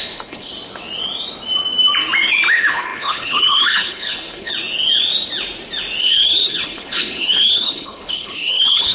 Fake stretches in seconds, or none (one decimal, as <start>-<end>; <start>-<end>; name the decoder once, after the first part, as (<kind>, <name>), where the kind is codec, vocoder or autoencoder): 0.0-0.5 (codec, HILCodec); 2.5-4.5; 6.0-8.9